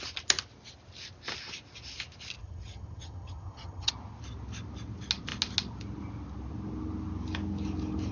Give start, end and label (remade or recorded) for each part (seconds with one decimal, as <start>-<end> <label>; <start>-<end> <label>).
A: 0.0-2.4 recorded; 2.4-3.9 remade; 3.9-8.1 recorded